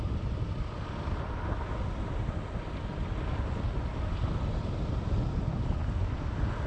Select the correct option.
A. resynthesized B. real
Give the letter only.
B